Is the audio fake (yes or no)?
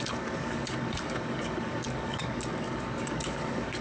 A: yes